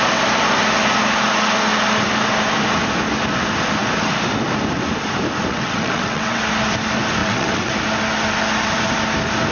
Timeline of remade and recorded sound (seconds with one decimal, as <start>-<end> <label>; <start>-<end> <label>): 0.0-5.5 recorded; 5.5-6.4 remade; 6.4-7.2 recorded; 7.2-7.7 remade; 7.7-9.5 recorded